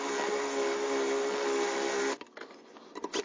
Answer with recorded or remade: recorded